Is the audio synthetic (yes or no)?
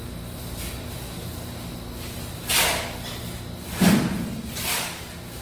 no